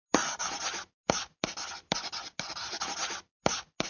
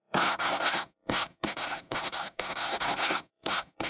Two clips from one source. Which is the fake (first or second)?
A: second